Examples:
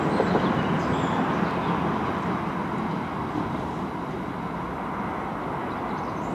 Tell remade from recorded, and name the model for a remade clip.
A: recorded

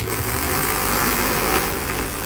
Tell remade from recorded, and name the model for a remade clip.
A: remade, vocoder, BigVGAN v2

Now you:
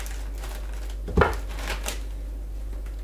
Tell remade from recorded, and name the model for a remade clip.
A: recorded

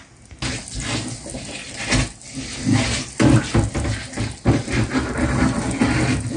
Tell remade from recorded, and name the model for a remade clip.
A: recorded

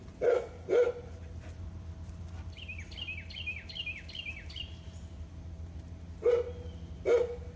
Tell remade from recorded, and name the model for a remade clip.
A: recorded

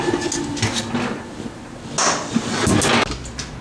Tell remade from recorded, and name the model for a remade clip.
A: recorded